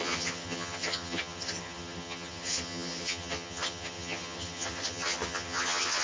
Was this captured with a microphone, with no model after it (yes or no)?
no